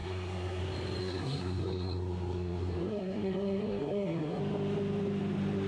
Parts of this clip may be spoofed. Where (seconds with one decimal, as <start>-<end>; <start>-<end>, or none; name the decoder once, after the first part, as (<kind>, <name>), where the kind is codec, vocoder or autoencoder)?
0.0-0.6 (codec, SNAC); 1.0-4.4